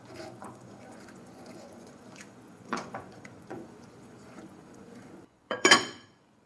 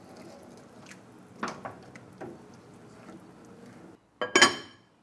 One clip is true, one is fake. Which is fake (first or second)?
first